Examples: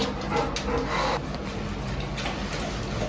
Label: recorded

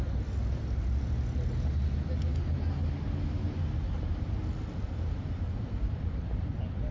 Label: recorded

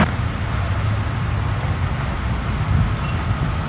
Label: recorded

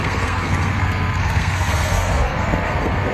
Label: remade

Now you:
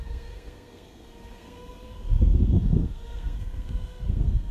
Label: remade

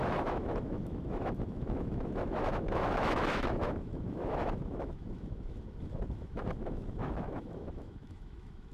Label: remade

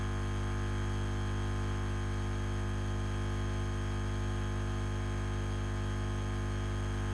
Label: recorded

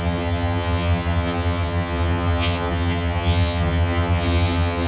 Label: remade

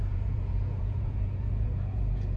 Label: remade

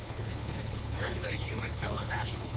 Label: remade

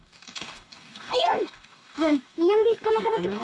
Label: remade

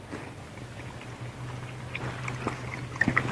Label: recorded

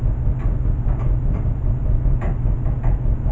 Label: recorded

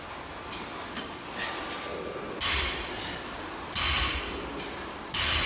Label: recorded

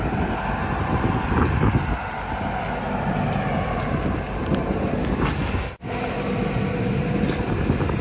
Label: recorded